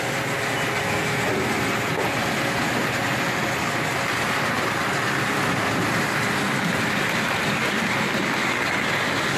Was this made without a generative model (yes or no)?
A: yes